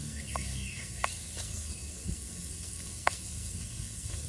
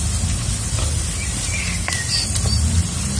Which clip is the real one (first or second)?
second